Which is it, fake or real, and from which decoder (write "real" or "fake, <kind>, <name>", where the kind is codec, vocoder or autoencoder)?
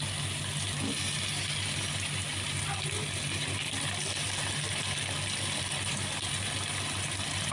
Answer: real